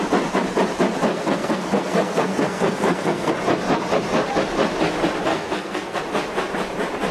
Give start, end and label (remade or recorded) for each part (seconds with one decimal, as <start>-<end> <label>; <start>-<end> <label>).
0.0-1.1 recorded; 1.1-3.3 remade; 3.3-5.3 recorded; 5.3-6.0 remade; 6.0-7.1 recorded